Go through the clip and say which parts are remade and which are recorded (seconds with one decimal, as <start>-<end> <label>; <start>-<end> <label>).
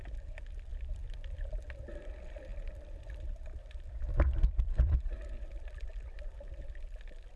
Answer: 0.0-2.5 recorded; 2.5-4.9 remade; 4.9-7.4 recorded